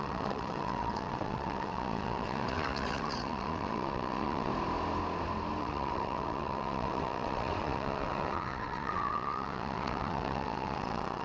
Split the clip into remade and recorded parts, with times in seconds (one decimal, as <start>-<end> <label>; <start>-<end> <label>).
0.0-4.5 remade; 4.5-5.6 recorded; 5.6-11.2 remade